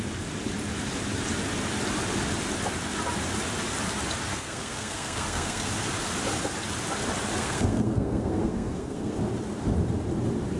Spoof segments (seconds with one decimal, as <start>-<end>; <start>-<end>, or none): 4.3-5.7; 7.4-9.2